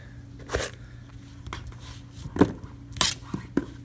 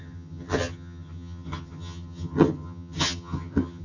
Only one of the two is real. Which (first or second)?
first